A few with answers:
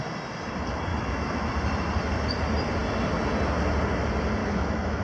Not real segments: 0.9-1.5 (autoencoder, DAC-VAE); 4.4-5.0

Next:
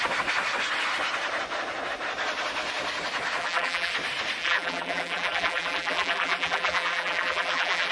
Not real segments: 3.4-3.9 (vocoder, BigVGAN v2); 4.4-7.9

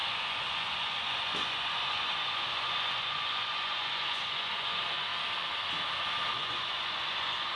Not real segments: 0.0-5.1 (vocoder, Vocos); 6.3-7.6

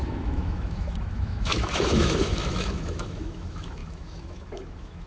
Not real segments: 0.0-5.1 (autoencoder, DAC-VAE)

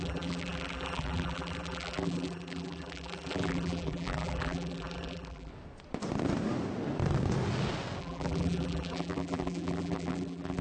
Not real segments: 0.0-5.5 (vocoder, BigVGAN v2); 8.0-10.6